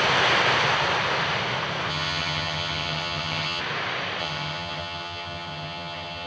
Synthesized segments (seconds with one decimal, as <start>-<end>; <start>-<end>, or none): 1.9-3.6; 4.2-6.3